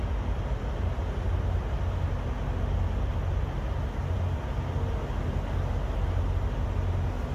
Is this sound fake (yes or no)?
no